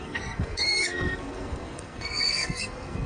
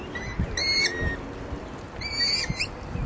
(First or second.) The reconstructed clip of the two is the first